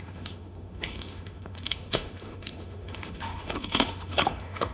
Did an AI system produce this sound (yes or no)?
yes